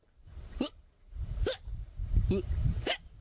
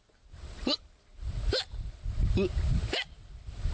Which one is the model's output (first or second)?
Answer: first